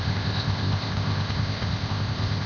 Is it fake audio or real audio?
fake